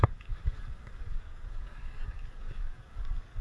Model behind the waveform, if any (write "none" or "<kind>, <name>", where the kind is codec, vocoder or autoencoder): codec, DAC